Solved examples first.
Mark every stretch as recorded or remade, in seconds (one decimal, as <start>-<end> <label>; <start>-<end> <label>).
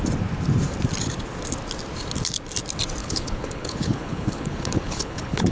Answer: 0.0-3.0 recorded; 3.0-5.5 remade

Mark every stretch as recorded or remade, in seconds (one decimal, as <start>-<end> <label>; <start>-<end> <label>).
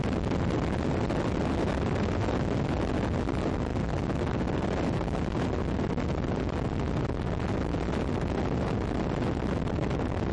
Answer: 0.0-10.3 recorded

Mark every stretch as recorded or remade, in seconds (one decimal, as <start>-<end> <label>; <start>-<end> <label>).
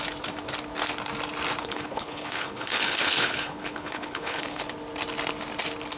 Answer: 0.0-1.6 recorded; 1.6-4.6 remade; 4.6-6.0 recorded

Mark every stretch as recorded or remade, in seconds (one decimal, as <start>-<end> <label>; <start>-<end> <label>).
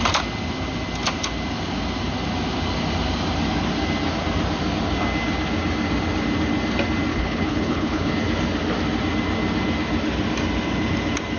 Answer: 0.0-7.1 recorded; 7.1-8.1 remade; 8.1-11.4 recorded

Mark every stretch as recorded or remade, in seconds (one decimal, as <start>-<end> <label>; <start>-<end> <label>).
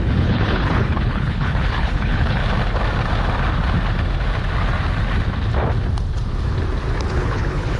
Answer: 0.0-2.4 remade; 2.4-7.1 recorded; 7.1-7.8 remade